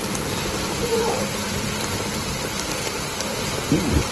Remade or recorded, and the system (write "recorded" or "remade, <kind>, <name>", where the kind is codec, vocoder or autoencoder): recorded